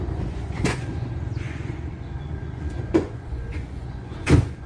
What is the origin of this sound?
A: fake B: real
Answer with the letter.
A